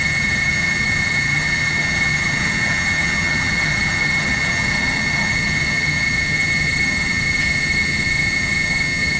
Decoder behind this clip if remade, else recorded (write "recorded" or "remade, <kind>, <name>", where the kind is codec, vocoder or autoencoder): remade, vocoder, HiFi-GAN